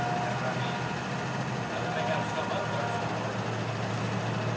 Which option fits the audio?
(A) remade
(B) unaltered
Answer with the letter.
B